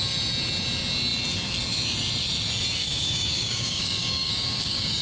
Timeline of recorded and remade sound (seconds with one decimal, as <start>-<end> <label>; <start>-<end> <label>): 0.0-2.8 recorded; 2.8-5.0 remade